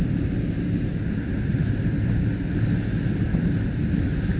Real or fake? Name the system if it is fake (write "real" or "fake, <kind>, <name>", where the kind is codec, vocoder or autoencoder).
real